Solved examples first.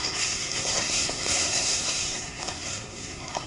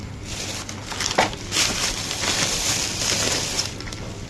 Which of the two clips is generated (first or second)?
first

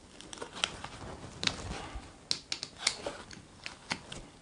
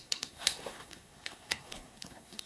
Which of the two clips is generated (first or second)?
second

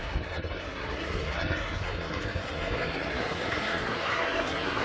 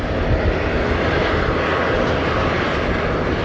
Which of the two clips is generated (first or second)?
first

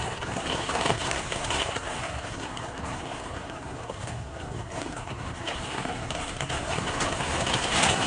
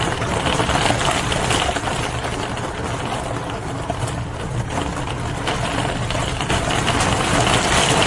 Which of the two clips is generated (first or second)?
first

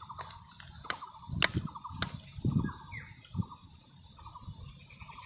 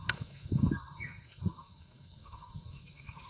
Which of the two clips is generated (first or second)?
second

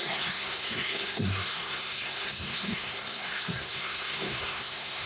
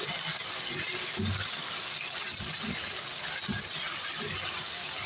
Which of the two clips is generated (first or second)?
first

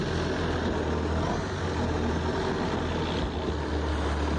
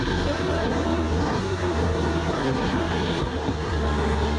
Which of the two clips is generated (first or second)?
second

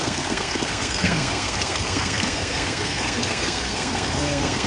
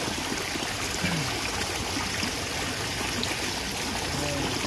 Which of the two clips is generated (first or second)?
first